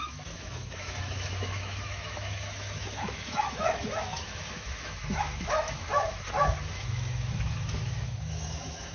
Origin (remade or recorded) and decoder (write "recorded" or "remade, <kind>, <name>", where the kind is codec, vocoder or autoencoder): remade, autoencoder, DAC-VAE